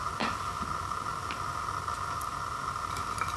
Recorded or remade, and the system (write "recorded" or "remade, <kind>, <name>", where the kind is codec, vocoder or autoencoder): recorded